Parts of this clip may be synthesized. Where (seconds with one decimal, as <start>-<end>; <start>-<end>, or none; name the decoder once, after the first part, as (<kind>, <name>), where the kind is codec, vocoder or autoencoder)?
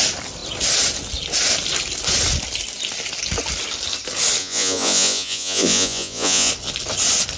4.4-6.5 (vocoder, Vocos)